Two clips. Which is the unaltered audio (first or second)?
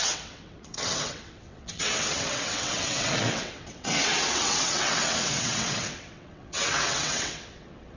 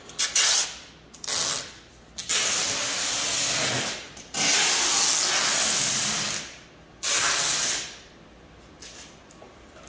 second